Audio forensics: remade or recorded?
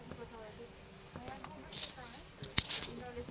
recorded